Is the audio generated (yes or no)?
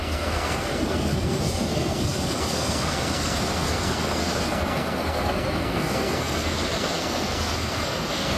yes